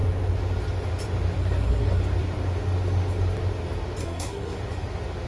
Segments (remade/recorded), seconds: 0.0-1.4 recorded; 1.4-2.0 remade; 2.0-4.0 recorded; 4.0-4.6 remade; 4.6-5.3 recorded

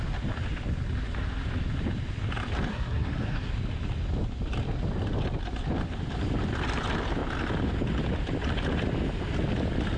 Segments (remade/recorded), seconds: 0.0-2.7 recorded; 2.7-3.5 remade; 3.5-10.0 recorded